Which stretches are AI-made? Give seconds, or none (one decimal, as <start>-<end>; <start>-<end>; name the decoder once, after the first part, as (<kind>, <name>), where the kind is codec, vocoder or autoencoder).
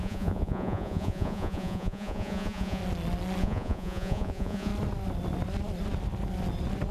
0.0-2.8 (vocoder, Vocos); 3.4-4.7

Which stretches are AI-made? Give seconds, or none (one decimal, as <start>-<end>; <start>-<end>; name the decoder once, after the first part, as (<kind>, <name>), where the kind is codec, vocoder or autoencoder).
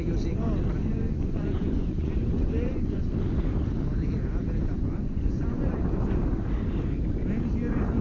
0.9-3.1 (vocoder, Vocos); 4.6-5.8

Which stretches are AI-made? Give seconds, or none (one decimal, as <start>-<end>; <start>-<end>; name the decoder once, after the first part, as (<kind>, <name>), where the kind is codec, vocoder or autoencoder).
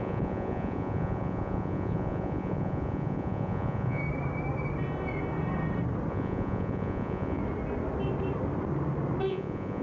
0.0-4.0 (vocoder, Vocos); 6.1-7.4; 9.3-9.8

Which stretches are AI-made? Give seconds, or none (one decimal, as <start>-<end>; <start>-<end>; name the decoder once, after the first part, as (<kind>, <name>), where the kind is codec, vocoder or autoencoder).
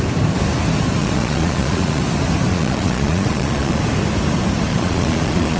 1.0-2.0 (vocoder, Vocos); 2.5-3.8; 4.7-5.6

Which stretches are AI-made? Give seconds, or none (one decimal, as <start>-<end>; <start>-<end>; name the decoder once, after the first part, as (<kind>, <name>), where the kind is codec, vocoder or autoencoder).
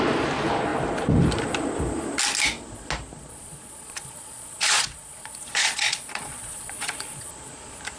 3.3-7.3 (vocoder, Vocos)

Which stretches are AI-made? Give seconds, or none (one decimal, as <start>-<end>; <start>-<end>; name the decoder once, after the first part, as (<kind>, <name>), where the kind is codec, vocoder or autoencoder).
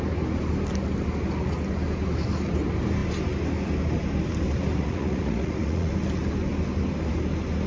4.8-5.9 (vocoder, Vocos)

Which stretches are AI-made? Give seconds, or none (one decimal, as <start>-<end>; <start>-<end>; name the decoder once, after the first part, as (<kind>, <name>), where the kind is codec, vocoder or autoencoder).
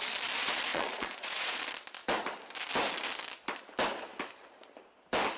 0.7-1.6 (vocoder, Vocos)